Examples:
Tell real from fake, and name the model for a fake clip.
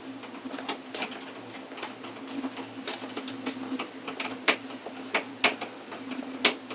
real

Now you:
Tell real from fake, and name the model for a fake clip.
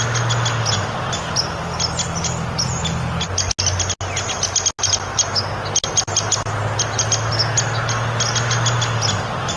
real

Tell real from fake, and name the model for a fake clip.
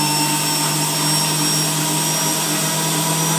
real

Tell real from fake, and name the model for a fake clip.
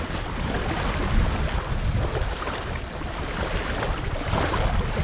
real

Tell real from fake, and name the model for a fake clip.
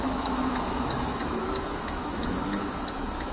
fake, autoencoder, DAC-VAE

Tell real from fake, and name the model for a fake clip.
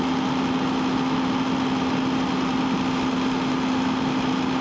real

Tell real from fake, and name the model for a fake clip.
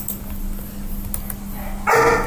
real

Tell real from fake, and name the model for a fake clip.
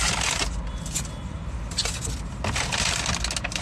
real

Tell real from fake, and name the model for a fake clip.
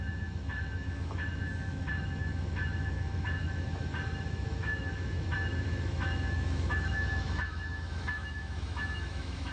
fake, autoencoder, DAC-VAE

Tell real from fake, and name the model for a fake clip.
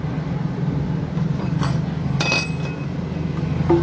real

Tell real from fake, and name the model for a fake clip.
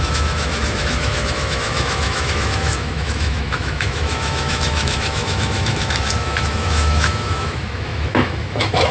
fake, autoencoder, DAC-VAE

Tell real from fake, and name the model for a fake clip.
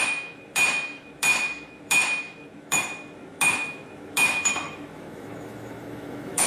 fake, autoencoder, DAC-VAE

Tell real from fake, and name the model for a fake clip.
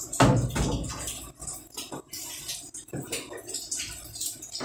real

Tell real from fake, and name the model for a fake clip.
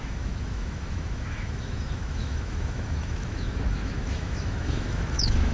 fake, autoencoder, DAC-VAE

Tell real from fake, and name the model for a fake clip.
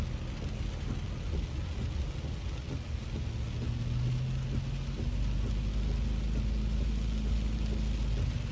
real